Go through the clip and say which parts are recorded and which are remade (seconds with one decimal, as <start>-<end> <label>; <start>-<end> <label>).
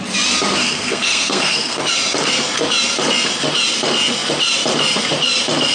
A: 0.0-0.6 recorded; 0.6-1.8 remade; 1.8-5.7 recorded